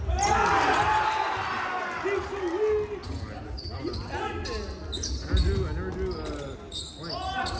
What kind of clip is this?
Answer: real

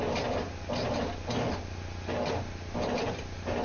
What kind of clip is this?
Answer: real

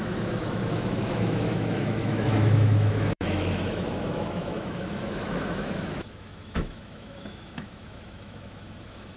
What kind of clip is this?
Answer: fake